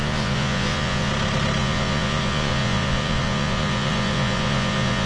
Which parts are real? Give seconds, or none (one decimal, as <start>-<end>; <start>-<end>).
1.1-1.6